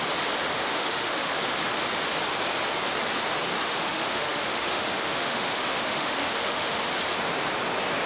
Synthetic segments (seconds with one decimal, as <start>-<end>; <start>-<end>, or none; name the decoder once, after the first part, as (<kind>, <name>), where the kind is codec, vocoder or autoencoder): 0.6-1.3 (autoencoder, DAC-VAE); 3.7-6.8